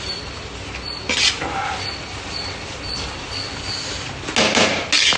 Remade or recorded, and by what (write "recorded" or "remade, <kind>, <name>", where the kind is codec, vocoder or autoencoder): recorded